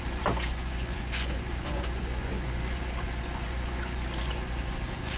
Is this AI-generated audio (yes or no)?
yes